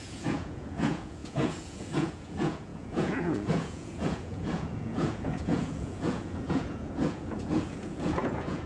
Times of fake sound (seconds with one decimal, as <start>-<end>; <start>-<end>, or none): 0.0-8.7